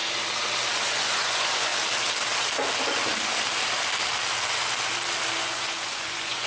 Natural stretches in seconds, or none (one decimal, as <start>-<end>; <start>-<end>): 0.0-0.7; 1.7-5.4